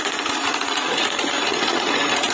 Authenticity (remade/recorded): remade